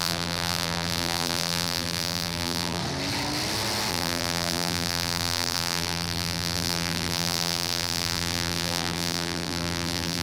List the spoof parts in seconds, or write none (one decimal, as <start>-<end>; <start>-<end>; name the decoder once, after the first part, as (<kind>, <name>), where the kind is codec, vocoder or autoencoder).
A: 0.0-2.8 (vocoder, BigVGAN v2); 3.9-10.2